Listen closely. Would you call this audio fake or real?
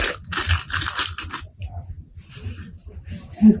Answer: real